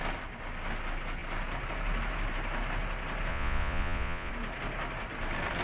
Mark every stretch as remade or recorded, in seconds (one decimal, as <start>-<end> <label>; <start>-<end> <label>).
0.0-3.3 recorded; 3.3-4.3 remade; 4.3-5.6 recorded